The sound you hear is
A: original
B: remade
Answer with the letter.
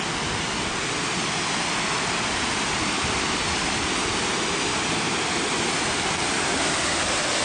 A